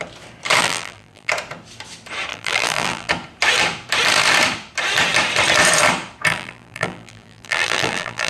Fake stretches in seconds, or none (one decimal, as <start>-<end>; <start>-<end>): 0.6-1.3; 2.3-3.1; 6.3-8.3